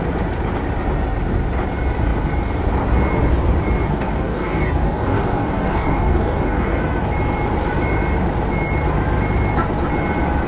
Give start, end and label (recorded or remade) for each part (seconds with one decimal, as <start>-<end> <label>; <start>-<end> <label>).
0.0-3.9 recorded; 3.9-6.8 remade; 6.8-10.5 recorded